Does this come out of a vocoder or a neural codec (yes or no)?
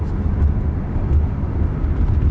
no